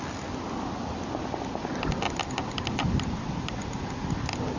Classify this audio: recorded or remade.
recorded